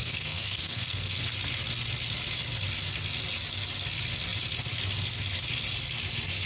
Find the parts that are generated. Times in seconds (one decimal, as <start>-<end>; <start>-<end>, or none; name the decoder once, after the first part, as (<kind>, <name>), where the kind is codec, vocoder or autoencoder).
0.0-1.3 (codec, SNAC)